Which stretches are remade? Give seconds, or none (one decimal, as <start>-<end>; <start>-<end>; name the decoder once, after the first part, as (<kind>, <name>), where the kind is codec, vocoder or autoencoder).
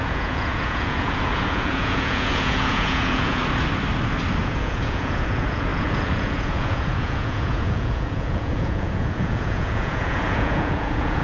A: 0.0-3.4 (vocoder, Vocos); 4.4-11.2